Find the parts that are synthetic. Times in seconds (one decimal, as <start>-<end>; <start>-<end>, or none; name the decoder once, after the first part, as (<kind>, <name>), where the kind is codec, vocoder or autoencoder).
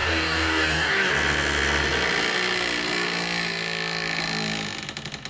0.0-1.1 (codec, DAC)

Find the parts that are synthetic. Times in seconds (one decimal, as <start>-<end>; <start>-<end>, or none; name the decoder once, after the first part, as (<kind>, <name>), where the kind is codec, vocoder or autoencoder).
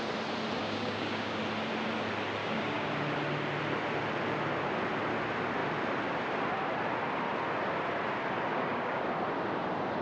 0.6-1.4 (codec, DAC); 2.4-2.9; 8.5-9.0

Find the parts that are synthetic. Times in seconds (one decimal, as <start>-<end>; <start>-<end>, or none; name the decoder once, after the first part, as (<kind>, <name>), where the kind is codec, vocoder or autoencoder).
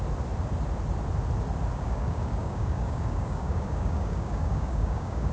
1.7-5.3 (codec, DAC)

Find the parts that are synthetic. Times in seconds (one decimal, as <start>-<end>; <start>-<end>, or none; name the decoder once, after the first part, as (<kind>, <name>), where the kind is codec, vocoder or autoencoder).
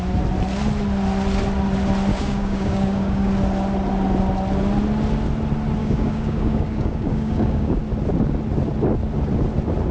2.1-3.3 (codec, DAC); 5.8-7.8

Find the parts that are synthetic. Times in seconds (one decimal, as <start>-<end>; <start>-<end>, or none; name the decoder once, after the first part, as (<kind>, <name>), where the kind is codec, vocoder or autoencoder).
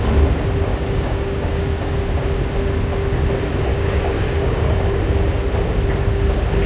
0.7-2.0 (codec, DAC); 3.7-5.0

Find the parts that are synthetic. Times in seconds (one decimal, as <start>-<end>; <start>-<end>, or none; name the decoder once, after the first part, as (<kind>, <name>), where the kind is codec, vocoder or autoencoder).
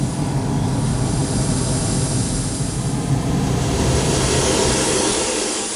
0.0-0.9 (codec, DAC); 4.4-5.8